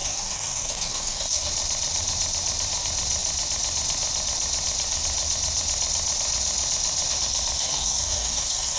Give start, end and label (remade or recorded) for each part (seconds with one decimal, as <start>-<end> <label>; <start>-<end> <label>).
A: 0.0-1.5 remade; 1.5-7.6 recorded; 7.6-8.8 remade